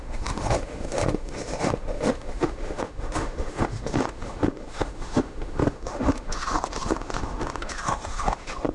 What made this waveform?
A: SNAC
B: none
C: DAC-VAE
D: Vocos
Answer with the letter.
C